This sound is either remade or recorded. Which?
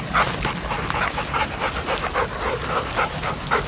recorded